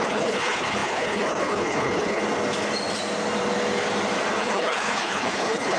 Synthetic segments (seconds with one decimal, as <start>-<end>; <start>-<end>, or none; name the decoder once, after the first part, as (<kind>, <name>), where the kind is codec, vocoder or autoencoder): 0.0-2.2 (codec, HILCodec); 4.4-5.8